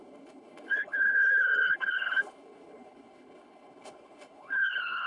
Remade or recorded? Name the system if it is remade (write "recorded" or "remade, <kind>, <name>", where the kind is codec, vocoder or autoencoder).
remade, codec, HILCodec